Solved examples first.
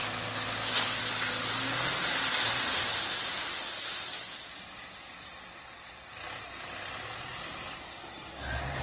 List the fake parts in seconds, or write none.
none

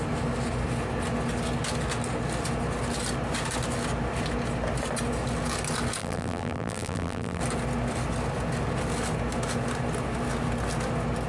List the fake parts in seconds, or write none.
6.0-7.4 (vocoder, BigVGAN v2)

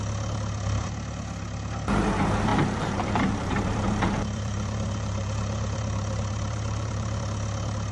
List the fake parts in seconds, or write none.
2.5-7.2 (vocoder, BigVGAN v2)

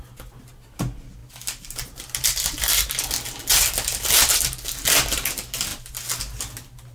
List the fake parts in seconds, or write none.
none

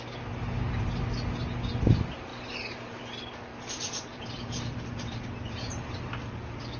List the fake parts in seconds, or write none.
2.3-3.0 (vocoder, BigVGAN v2); 3.5-6.1